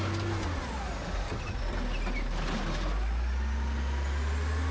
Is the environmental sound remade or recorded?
recorded